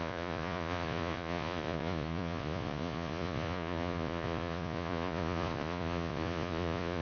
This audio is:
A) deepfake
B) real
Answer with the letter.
A